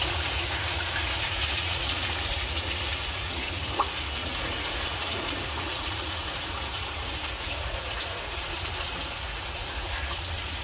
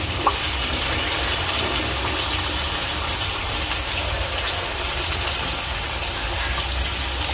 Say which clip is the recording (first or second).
second